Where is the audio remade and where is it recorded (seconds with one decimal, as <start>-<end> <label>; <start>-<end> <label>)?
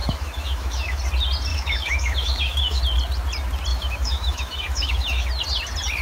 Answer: 0.0-1.0 remade; 1.0-1.5 recorded; 1.5-2.8 remade; 2.8-3.7 recorded; 3.7-5.3 remade; 5.3-6.0 recorded